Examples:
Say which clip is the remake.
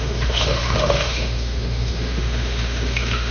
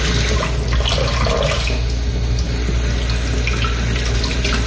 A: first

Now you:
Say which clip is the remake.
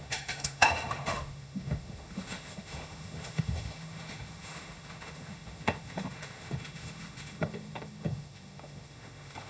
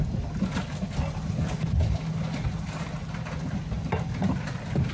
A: first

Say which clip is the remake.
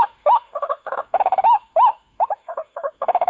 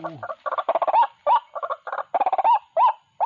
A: first